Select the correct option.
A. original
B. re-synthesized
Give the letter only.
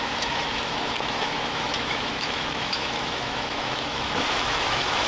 B